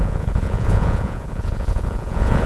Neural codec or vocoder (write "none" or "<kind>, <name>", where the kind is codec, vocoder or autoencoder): vocoder, Vocos